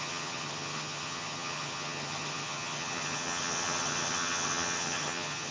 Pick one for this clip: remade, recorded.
remade